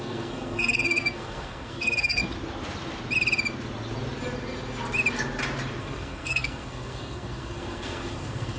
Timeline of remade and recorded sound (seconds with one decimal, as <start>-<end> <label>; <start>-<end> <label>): 0.0-2.2 remade; 2.2-5.8 recorded; 5.8-8.6 remade